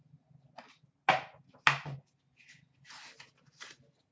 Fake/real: real